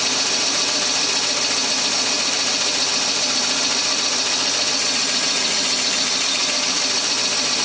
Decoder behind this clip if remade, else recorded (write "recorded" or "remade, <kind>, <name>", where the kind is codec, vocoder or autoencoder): remade, vocoder, BigVGAN v2